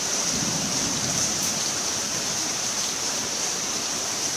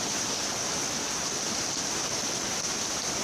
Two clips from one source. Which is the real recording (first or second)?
second